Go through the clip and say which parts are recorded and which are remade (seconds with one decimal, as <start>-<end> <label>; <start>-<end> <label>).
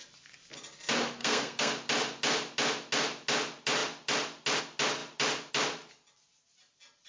0.0-1.2 recorded; 1.2-1.7 remade; 1.7-7.1 recorded